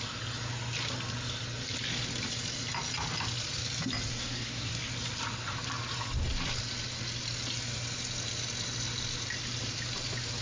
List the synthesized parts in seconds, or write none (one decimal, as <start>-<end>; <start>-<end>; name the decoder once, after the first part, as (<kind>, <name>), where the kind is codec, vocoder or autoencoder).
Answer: 4.1-4.7 (codec, SNAC)